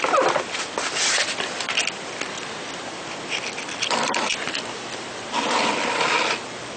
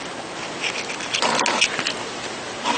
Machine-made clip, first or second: first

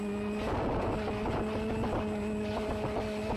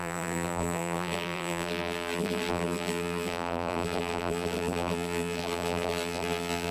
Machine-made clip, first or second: second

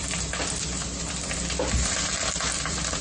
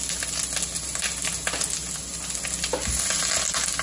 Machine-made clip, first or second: first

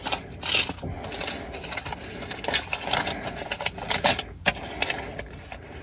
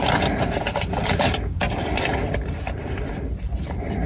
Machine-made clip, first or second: second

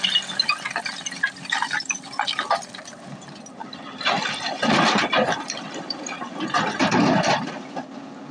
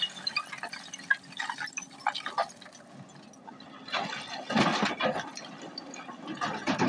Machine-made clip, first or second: first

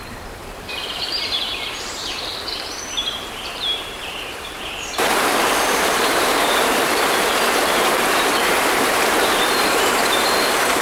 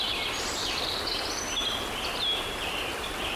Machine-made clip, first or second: first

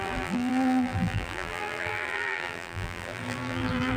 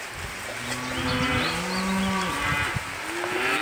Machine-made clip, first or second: first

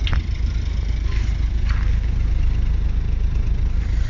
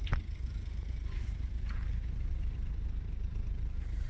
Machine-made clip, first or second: second